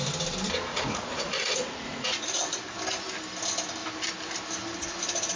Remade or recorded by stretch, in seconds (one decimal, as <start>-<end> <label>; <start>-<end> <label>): 0.0-0.7 recorded; 0.7-2.6 remade; 2.6-5.4 recorded